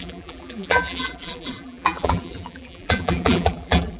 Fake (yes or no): yes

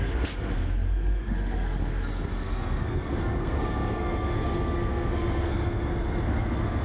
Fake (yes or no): yes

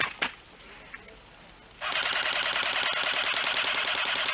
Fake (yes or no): no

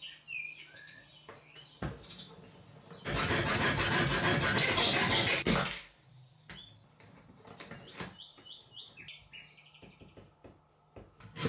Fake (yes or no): no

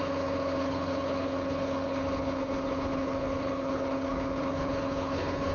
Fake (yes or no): yes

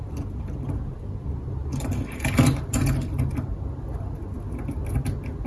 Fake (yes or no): no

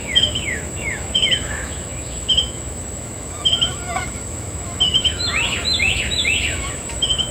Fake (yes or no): yes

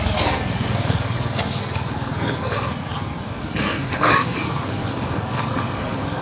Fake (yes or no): yes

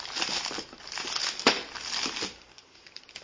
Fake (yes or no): no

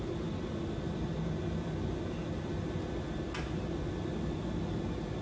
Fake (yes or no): no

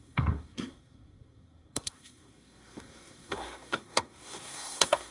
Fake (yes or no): yes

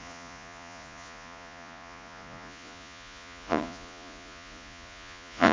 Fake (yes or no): yes